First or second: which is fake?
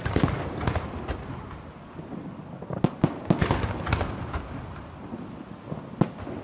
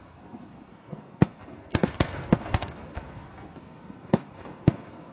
second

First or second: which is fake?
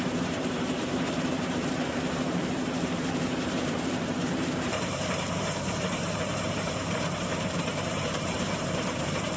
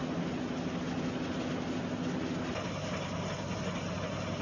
first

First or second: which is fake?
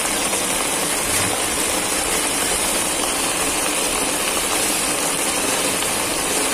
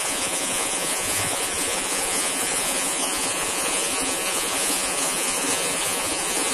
second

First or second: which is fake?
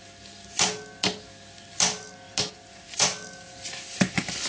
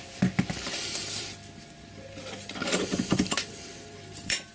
second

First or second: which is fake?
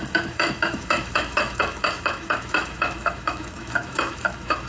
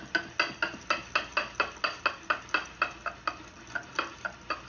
first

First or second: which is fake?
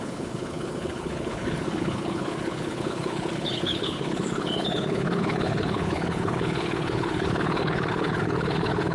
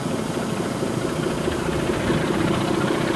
first